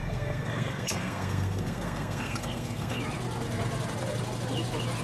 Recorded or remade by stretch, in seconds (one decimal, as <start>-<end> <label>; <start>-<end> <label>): 0.0-3.0 remade; 3.0-5.0 recorded